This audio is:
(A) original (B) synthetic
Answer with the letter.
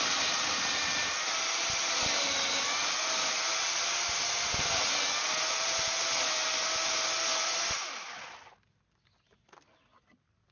A